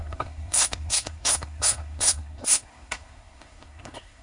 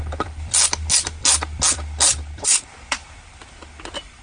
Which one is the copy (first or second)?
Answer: first